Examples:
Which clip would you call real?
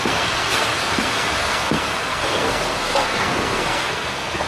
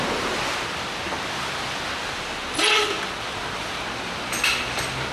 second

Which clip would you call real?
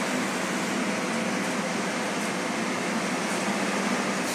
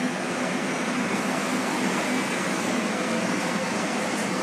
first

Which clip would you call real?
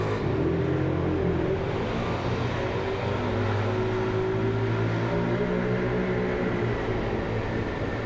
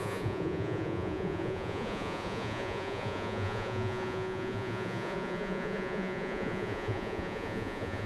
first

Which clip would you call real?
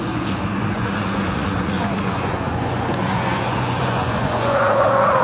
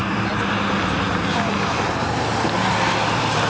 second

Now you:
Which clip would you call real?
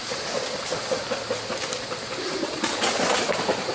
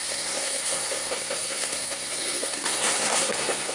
first